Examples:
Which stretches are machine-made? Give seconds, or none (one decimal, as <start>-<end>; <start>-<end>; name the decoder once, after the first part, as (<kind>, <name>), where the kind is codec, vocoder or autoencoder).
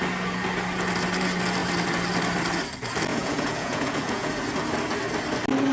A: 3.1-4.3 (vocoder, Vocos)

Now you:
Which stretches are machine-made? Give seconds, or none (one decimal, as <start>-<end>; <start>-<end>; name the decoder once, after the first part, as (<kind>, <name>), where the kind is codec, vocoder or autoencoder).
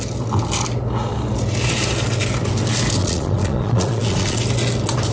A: 3.0-4.4 (vocoder, Vocos)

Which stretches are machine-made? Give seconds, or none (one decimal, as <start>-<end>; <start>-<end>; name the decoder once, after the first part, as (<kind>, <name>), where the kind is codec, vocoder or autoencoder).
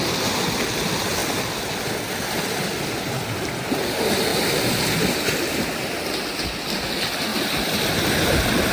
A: none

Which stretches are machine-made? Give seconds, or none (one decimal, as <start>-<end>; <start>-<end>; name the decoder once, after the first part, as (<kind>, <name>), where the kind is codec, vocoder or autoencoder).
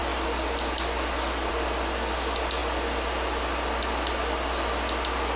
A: none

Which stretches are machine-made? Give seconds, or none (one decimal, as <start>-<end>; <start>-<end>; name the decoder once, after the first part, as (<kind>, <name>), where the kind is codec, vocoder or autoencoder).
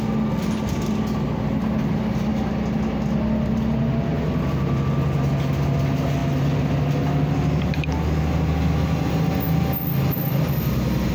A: none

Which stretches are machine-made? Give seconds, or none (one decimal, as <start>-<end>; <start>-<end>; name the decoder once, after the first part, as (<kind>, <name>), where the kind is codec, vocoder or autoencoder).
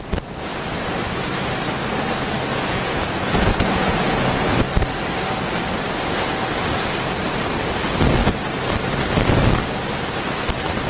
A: 2.5-4.5 (vocoder, Vocos)